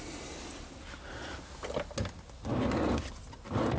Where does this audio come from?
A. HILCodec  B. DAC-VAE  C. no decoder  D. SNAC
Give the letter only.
C